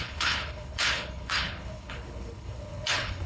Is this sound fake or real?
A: fake